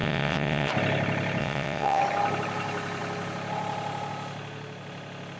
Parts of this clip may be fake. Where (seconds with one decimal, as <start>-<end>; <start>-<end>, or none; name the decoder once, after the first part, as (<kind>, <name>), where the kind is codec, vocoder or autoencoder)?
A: 0.0-0.7 (vocoder, WaveNeXt); 1.4-2.0